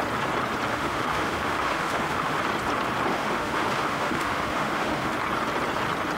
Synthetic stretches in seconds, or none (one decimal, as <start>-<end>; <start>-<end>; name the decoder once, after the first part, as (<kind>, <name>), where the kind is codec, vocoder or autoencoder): 0.7-2.4 (autoencoder, DAC-VAE); 3.1-5.1